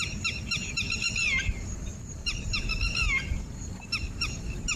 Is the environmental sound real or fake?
fake